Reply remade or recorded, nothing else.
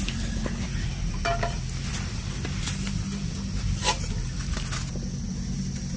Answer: recorded